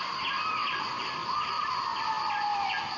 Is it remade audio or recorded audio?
recorded